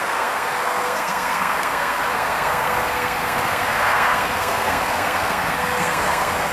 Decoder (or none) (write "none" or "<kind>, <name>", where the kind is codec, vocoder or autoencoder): codec, SNAC